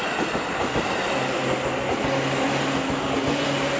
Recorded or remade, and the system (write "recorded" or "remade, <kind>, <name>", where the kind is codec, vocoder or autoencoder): recorded